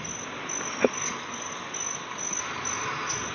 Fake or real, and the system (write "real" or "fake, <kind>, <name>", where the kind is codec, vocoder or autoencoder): real